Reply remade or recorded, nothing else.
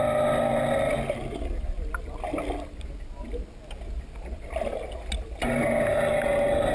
recorded